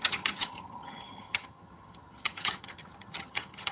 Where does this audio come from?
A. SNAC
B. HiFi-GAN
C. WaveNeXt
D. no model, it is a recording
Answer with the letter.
B